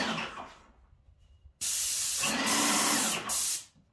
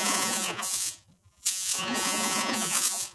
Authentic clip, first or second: first